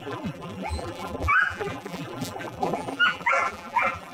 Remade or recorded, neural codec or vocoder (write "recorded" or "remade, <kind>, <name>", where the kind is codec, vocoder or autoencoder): remade, vocoder, BigVGAN v2